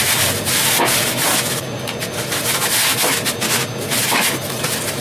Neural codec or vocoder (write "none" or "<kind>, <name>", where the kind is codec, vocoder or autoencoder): none